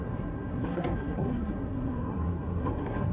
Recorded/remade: remade